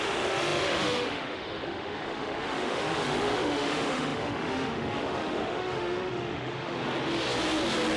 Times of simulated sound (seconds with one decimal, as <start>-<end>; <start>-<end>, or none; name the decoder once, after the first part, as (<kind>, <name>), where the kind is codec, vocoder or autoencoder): 0.0-6.8 (autoencoder, DAC-VAE)